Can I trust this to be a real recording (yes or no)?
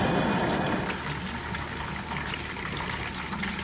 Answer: yes